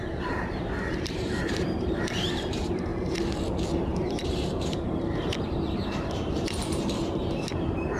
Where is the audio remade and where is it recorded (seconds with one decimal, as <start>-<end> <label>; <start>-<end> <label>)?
0.0-2.9 remade; 2.9-3.8 recorded; 3.8-8.0 remade